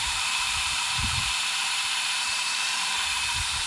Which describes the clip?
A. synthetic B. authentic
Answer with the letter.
A